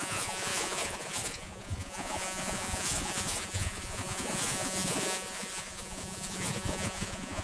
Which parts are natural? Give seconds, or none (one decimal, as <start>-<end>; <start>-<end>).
none